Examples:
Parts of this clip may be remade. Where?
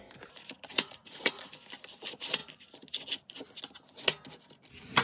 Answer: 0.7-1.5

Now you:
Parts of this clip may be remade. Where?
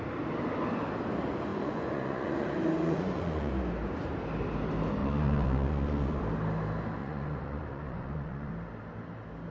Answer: 1.5-3.5; 5.0-6.2; 7.0-8.5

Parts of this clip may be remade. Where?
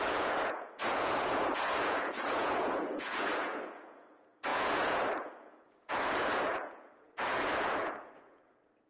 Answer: 0.0-8.9